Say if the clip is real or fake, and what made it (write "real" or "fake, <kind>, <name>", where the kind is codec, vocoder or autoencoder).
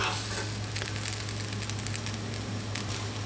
real